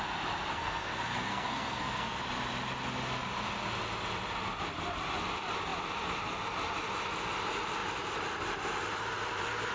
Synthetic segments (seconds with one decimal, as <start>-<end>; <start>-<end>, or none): 0.5-2.2